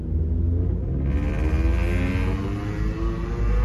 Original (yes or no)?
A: yes